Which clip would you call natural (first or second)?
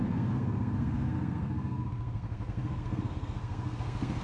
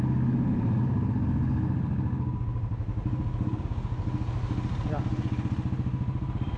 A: second